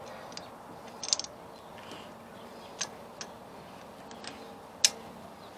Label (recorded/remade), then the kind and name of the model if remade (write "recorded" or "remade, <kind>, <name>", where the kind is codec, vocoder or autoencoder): recorded